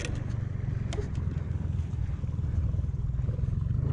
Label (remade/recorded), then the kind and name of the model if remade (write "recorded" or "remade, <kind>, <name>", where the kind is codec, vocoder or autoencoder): recorded